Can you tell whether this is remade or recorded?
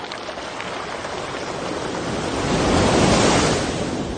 recorded